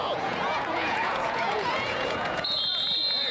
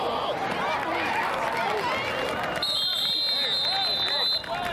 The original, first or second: second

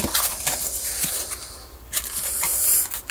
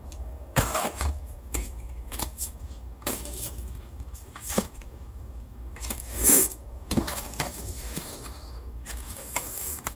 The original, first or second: first